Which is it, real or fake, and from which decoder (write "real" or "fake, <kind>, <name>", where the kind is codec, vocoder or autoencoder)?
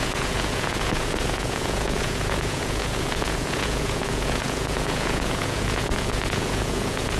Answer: fake, vocoder, Vocos